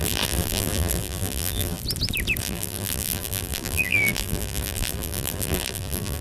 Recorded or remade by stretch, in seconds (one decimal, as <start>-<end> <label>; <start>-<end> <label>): 0.0-1.8 remade; 1.8-2.4 recorded; 2.4-6.2 remade